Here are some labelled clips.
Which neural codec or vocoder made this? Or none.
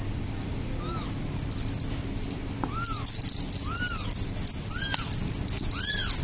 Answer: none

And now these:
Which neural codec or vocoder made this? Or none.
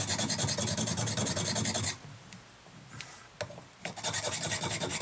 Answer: none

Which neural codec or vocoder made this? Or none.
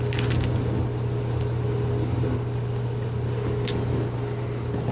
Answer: none